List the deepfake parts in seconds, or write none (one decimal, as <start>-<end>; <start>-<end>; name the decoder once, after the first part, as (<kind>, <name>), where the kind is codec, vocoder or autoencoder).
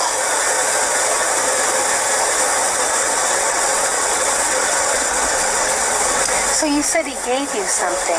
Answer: 2.6-6.2 (vocoder, WaveNeXt); 6.8-7.5